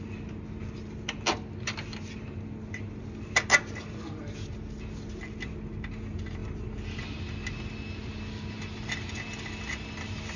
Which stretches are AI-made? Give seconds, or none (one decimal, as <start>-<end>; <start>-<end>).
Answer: none

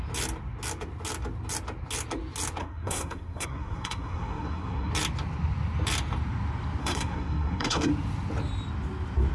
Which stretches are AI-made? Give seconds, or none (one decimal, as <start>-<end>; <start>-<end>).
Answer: 2.6-4.9; 6.8-7.9

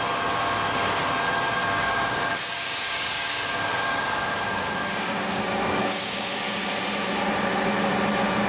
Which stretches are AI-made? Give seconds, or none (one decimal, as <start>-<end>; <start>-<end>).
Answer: 1.6-6.4

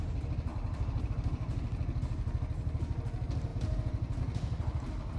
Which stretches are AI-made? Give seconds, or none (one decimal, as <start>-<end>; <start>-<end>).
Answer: 0.5-1.1; 3.5-4.2

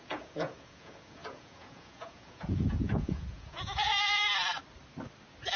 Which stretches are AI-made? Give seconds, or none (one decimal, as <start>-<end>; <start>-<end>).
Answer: 0.0-4.3

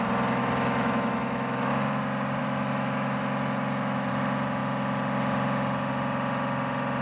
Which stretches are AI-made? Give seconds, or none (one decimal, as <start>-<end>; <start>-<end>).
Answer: 0.4-1.7; 2.4-4.1

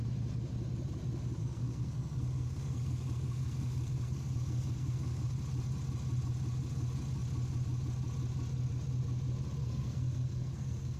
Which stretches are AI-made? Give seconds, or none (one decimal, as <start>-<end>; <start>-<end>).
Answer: 1.4-5.3; 9.6-11.0